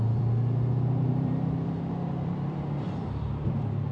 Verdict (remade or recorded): remade